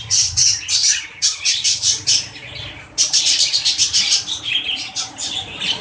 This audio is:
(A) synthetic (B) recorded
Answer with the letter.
A